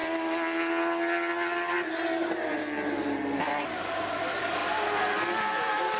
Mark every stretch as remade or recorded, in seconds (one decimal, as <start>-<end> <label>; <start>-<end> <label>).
0.0-1.7 recorded; 1.7-2.6 remade; 2.6-3.5 recorded; 3.5-4.6 remade; 4.6-6.0 recorded